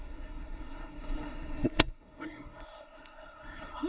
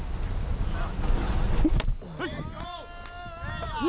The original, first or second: second